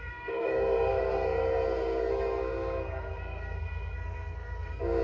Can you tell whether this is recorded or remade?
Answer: remade